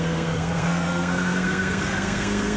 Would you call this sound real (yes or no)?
no